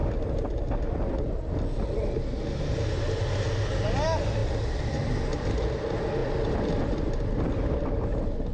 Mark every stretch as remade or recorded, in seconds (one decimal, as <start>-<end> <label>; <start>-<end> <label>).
0.0-4.4 recorded; 4.4-5.1 remade; 5.1-6.2 recorded; 6.2-7.5 remade; 7.5-8.5 recorded